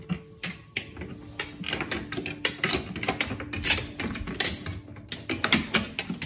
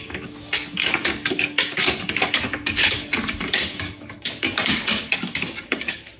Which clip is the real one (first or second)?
first